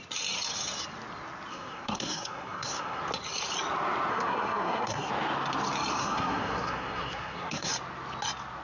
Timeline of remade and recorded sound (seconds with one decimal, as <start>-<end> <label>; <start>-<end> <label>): 0.0-1.5 recorded; 1.5-3.0 remade; 3.0-4.1 recorded; 4.1-5.1 remade; 5.1-6.0 recorded; 6.0-7.7 remade; 7.7-8.6 recorded